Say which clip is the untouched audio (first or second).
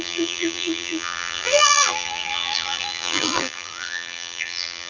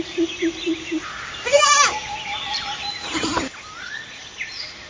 second